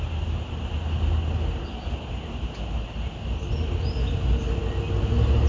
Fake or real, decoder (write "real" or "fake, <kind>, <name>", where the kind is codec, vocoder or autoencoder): real